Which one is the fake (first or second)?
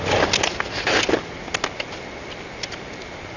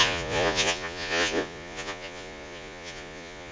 second